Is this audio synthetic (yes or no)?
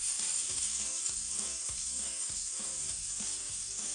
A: yes